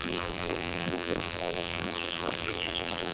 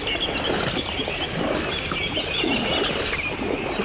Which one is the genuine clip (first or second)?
second